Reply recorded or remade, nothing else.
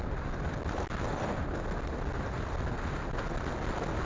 recorded